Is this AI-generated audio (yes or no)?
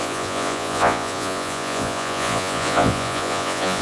yes